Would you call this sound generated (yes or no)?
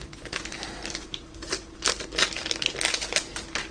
no